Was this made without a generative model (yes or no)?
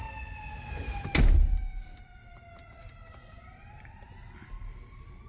yes